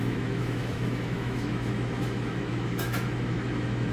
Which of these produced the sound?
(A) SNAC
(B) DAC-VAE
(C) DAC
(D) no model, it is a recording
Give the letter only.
B